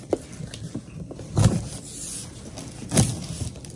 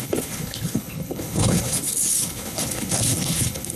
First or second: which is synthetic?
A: second